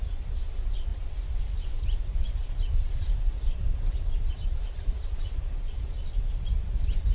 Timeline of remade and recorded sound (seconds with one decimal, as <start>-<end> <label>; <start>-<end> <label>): 0.0-7.1 recorded